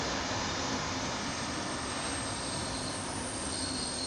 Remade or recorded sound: recorded